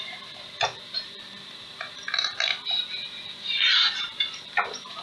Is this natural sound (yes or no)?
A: no